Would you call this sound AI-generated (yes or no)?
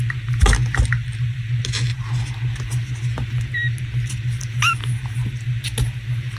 no